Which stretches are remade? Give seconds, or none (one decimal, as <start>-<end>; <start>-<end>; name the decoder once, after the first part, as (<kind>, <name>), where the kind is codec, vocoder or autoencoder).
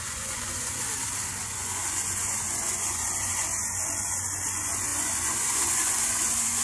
0.0-0.9 (vocoder, Vocos); 1.4-6.6